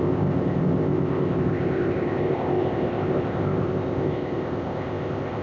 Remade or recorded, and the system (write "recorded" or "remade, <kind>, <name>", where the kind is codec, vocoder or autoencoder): remade, codec, ZipCodec